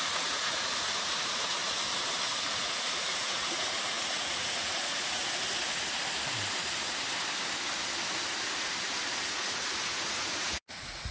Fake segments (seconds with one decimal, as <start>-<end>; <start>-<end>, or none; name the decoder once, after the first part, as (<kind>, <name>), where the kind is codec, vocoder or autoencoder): 0.0-1.6 (vocoder, Vocos); 2.4-5.2; 9.3-11.1